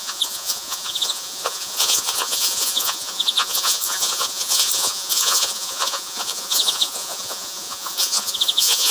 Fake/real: fake